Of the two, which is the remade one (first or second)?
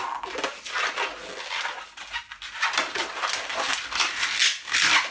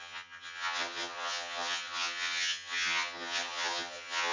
second